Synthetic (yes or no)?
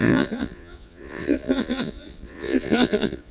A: yes